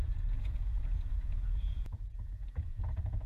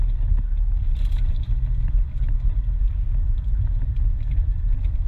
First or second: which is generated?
first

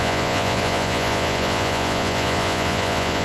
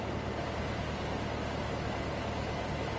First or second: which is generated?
first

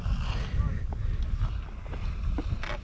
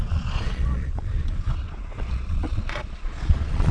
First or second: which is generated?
second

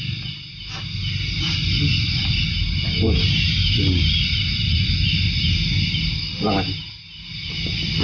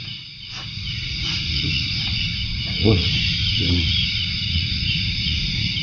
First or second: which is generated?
second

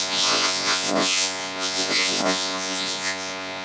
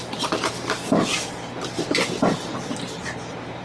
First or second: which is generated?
first